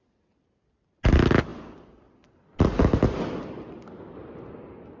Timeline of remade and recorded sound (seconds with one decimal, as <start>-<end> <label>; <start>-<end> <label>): 0.0-5.0 recorded